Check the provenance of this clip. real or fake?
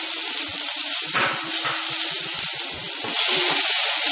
real